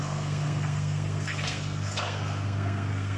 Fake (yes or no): yes